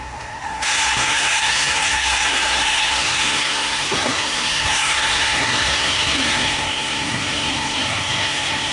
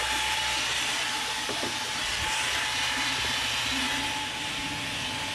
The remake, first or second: first